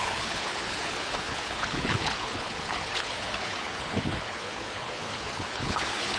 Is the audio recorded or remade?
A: remade